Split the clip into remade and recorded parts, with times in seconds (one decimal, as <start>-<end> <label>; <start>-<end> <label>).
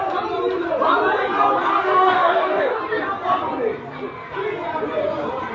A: 0.0-1.7 recorded; 1.7-2.8 remade; 2.8-5.5 recorded